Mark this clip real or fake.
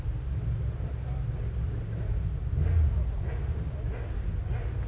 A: real